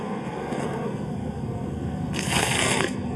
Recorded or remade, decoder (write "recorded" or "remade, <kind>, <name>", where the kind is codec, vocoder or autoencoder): remade, codec, SNAC